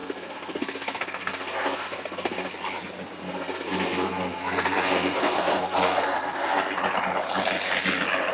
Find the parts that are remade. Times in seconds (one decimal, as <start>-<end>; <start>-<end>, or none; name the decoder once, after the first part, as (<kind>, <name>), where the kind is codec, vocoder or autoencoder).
0.0-2.5 (codec, SNAC); 3.2-6.7